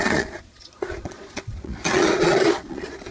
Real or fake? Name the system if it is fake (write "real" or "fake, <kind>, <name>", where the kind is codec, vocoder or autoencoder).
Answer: fake, vocoder, Vocos